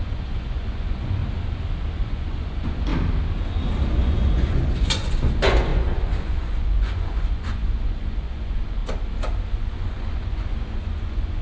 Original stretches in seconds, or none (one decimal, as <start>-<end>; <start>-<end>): 1.2-2.0; 2.9-3.9; 8.8-9.5